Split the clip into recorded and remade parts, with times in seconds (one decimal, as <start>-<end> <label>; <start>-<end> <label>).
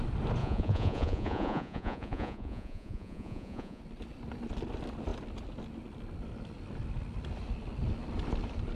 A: 0.0-0.4 recorded; 0.4-3.8 remade; 3.8-8.7 recorded